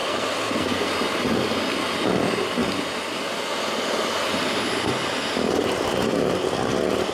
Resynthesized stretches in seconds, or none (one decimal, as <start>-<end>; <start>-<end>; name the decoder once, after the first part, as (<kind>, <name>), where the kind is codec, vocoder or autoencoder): 0.0-0.9 (codec, SNAC)